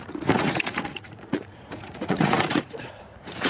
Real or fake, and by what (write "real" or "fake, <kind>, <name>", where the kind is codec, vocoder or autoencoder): fake, vocoder, Vocos